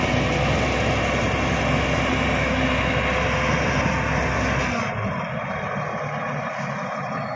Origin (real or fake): real